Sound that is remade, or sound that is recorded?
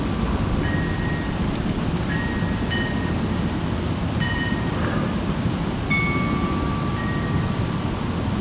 recorded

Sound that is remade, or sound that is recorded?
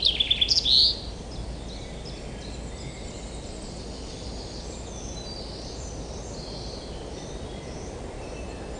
recorded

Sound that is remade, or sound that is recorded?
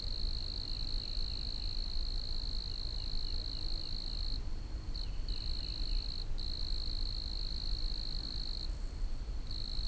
recorded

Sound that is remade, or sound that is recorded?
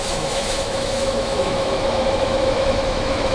remade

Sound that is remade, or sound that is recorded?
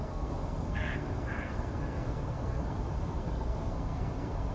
remade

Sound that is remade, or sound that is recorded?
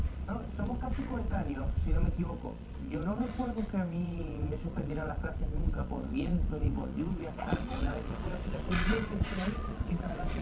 remade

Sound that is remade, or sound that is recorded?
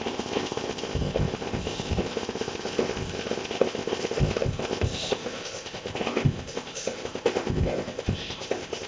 remade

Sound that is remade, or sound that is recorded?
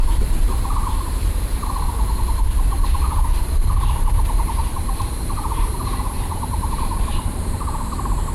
remade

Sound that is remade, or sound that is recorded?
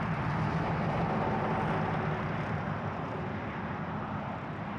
recorded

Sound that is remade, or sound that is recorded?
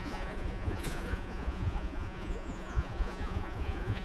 remade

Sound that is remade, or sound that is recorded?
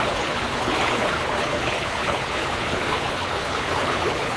remade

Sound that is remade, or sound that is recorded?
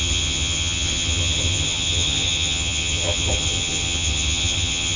remade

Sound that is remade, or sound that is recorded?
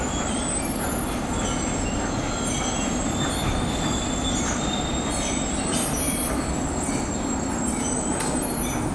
recorded